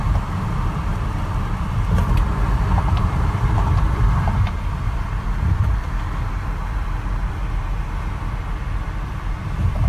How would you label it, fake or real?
fake